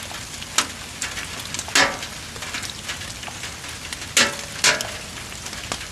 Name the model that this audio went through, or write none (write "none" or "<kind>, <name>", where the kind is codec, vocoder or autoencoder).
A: none